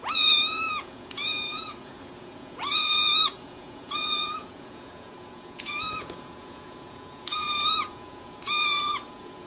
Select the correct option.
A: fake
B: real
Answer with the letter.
A